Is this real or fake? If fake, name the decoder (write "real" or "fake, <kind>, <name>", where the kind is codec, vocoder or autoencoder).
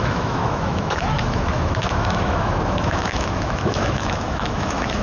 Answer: fake, autoencoder, DAC-VAE